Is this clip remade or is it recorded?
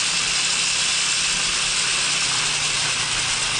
recorded